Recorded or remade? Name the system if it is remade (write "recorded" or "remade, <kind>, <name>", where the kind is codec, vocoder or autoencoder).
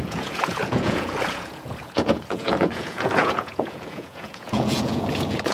remade, vocoder, Vocos